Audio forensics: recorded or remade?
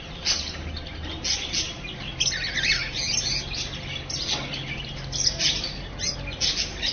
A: recorded